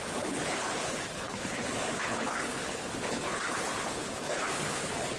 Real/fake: fake